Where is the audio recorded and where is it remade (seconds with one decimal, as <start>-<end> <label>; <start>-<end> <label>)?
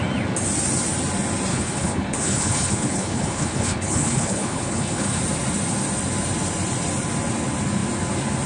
0.0-1.5 recorded; 1.5-5.2 remade; 5.2-8.5 recorded